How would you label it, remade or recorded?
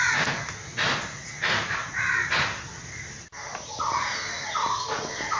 recorded